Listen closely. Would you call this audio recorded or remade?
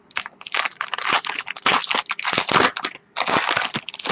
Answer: recorded